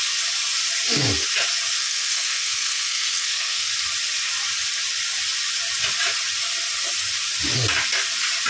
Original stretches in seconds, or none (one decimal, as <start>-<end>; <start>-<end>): 0.0-1.8; 3.7-8.5